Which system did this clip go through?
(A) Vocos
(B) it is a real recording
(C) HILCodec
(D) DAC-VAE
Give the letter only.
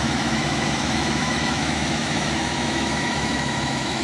D